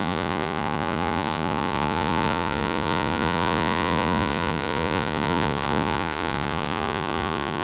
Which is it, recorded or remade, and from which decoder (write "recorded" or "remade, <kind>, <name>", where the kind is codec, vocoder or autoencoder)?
remade, vocoder, Vocos